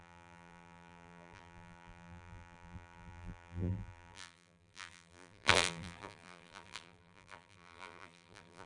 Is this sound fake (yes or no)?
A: yes